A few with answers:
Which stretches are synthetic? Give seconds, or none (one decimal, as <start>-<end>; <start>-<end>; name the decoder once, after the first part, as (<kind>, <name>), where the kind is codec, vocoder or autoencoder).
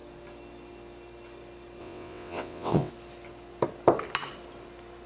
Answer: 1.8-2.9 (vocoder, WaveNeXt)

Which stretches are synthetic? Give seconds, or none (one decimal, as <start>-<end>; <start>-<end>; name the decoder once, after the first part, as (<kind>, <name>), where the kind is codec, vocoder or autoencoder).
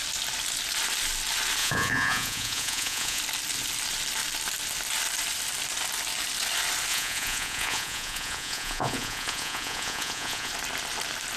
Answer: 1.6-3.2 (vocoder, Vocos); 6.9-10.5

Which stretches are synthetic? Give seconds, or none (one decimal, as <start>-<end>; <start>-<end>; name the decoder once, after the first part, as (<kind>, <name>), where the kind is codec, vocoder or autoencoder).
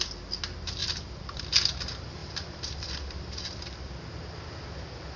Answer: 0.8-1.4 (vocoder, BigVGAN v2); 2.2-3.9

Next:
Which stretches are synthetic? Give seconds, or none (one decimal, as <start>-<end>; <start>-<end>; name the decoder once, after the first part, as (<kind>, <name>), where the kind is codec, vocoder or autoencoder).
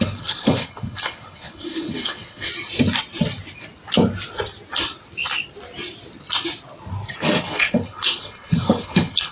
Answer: 0.0-2.5 (codec, HILCodec); 7.4-9.3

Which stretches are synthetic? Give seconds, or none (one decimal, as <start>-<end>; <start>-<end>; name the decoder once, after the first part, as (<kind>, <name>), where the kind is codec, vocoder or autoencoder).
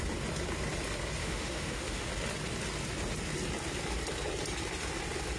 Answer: 1.2-2.1 (autoencoder, DAC-VAE)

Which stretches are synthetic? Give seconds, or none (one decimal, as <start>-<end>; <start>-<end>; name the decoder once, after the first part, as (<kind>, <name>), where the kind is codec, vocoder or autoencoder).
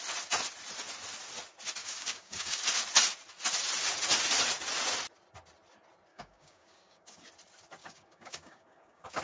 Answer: 1.8-2.6 (codec, DAC); 6.1-7.3; 7.8-9.2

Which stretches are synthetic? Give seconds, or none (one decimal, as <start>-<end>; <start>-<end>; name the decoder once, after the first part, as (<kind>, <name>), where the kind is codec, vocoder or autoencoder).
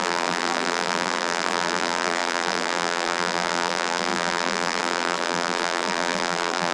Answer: 0.0-6.7 (vocoder, BigVGAN v2)